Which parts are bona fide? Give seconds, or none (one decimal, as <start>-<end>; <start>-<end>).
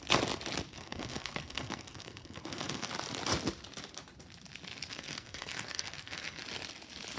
0.0-0.7; 2.9-4.9; 6.4-7.2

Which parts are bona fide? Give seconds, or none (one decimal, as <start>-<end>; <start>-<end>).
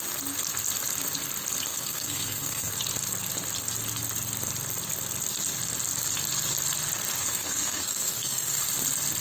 0.0-1.7; 2.7-7.2; 8.6-9.2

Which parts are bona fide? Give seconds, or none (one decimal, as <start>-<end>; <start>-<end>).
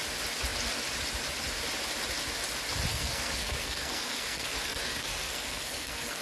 0.0-2.9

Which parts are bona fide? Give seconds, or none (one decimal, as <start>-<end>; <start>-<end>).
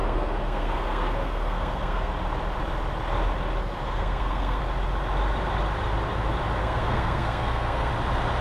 2.1-3.8; 4.6-6.6; 7.9-8.4